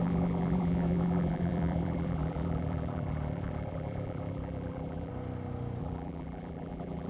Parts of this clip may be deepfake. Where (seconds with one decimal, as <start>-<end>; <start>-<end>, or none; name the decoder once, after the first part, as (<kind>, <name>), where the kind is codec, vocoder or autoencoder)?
0.0-5.1 (vocoder, BigVGAN v2); 5.8-7.1